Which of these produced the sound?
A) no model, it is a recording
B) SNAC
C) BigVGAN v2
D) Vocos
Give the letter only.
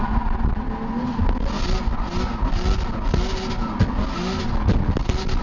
A